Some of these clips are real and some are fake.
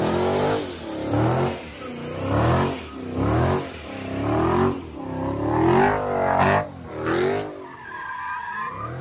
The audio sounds real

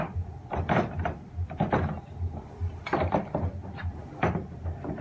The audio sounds fake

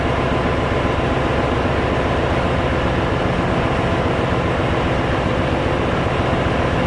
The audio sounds real